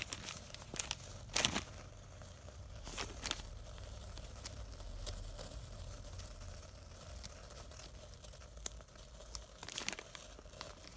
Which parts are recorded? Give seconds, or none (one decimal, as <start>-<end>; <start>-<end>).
0.0-11.0